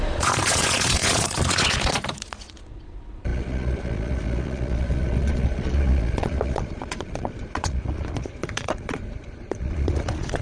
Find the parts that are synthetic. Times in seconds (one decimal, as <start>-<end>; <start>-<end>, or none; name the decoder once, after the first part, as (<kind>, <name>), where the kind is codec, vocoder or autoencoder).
0.0-10.4 (vocoder, Vocos)